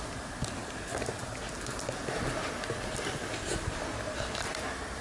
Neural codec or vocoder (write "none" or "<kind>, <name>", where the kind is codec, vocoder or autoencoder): none